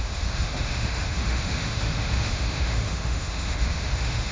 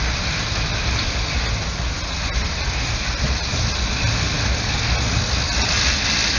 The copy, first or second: first